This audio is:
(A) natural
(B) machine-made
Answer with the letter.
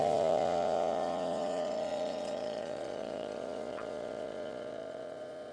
B